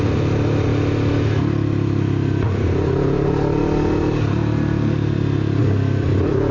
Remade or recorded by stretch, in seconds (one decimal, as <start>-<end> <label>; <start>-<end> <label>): 0.0-6.5 recorded